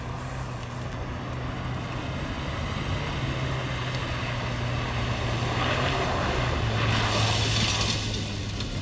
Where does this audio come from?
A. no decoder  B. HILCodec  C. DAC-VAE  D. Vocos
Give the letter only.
A